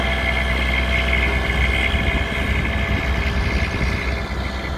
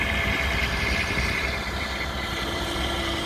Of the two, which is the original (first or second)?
first